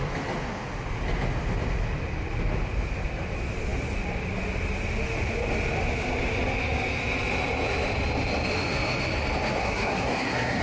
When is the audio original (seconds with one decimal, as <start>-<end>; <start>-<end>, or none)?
0.0-9.6